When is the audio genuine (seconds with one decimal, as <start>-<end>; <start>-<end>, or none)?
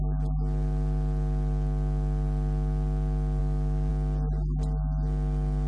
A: 0.0-3.4; 3.9-5.7